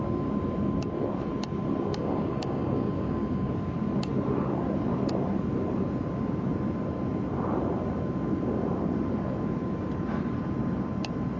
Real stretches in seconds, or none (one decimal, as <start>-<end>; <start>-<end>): 0.0-1.9; 3.5-11.4